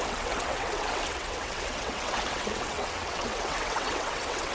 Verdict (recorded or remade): remade